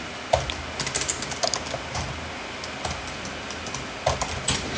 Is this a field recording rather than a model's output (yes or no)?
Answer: yes